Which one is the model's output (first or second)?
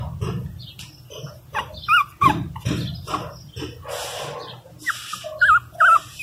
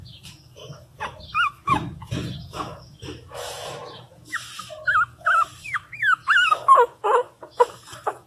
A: second